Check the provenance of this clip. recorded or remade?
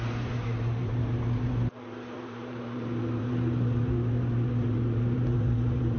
remade